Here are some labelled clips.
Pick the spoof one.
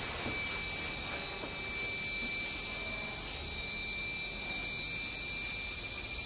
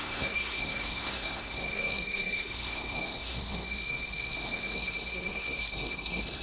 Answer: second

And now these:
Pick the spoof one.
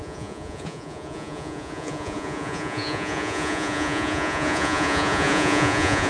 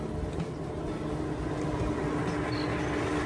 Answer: first